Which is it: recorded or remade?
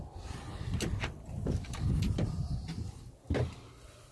recorded